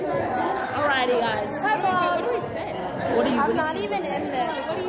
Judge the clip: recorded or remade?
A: recorded